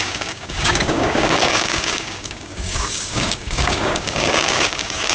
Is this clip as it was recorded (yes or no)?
no